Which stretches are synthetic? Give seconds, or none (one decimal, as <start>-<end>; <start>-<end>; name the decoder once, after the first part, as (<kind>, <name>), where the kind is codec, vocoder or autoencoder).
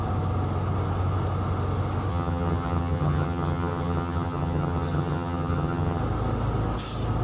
2.1-6.0 (vocoder, HiFi-GAN)